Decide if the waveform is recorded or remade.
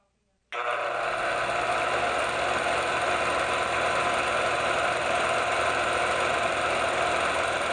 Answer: recorded